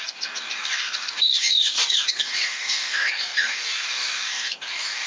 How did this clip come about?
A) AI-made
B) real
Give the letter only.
A